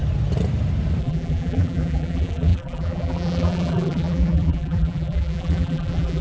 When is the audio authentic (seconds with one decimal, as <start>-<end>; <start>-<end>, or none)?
0.0-1.0